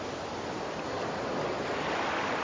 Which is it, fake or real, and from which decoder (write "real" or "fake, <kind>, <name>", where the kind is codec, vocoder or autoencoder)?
real